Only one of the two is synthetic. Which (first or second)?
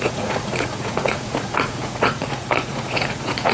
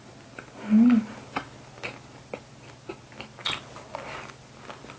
first